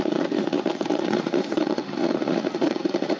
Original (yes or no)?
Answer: no